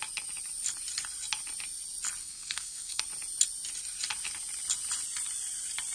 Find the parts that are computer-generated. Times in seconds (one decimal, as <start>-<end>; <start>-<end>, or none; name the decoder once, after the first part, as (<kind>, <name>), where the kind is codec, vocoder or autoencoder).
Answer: 2.2-3.0 (codec, SNAC)